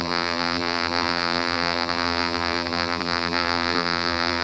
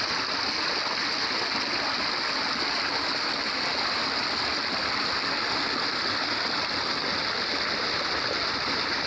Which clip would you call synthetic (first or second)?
first